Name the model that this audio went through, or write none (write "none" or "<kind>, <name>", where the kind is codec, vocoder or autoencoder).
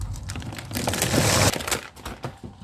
none